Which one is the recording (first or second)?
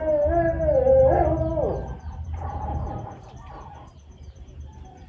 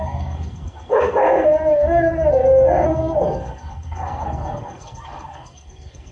first